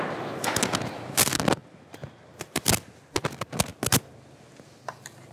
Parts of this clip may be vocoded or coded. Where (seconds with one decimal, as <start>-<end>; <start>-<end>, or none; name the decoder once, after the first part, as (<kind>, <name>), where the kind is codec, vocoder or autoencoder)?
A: none